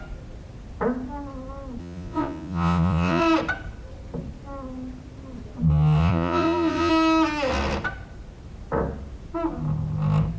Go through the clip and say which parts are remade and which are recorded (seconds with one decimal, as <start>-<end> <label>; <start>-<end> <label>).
0.0-1.8 recorded; 1.8-3.2 remade; 3.2-6.0 recorded; 6.0-6.9 remade; 6.9-10.4 recorded